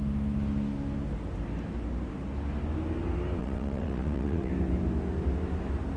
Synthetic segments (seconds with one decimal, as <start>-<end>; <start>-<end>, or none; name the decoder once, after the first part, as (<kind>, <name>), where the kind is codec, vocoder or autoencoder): 3.4-4.5 (vocoder, WaveNeXt)